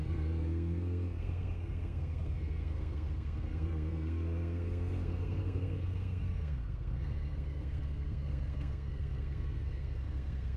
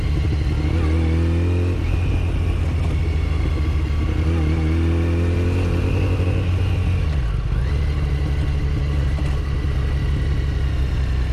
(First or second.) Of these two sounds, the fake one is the first